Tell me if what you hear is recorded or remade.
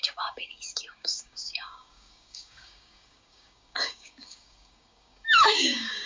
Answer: remade